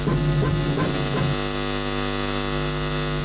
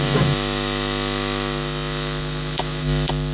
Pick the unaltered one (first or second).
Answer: first